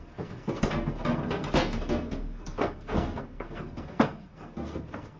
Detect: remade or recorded remade